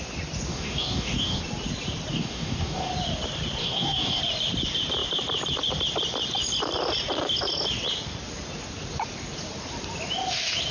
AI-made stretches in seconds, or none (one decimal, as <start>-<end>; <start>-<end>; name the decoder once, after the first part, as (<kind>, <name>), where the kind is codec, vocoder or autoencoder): 0.5-1.4 (codec, DAC); 2.1-2.9; 3.6-4.2